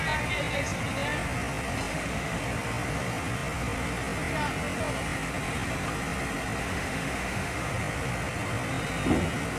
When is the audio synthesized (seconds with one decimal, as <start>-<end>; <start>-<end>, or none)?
1.9-2.4; 6.6-7.7